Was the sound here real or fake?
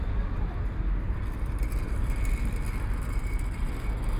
real